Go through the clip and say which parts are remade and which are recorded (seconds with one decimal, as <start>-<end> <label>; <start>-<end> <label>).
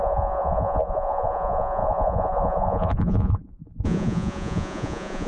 0.0-5.3 remade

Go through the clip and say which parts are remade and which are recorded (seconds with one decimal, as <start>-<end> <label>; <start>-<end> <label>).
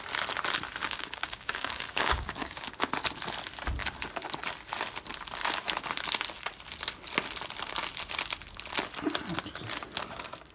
0.0-0.8 recorded; 0.8-2.9 remade; 2.9-10.5 recorded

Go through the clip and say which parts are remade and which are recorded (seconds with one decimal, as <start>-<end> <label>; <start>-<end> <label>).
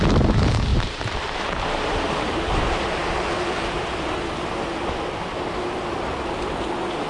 0.0-0.7 recorded; 0.7-2.5 remade; 2.5-7.1 recorded